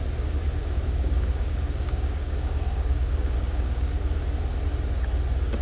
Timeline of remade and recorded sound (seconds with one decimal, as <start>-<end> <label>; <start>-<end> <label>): 0.0-0.6 recorded; 0.6-4.0 remade; 4.0-5.6 recorded